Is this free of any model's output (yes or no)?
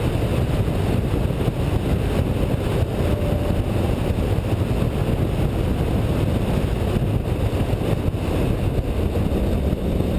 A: yes